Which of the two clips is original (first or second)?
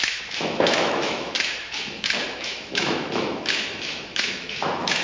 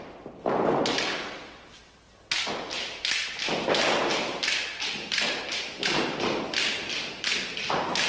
second